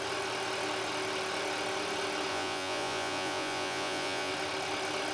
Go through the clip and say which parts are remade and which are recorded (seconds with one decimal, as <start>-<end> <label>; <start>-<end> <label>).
0.0-2.3 recorded; 2.3-4.3 remade; 4.3-5.1 recorded